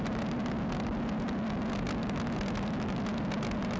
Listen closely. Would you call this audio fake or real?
real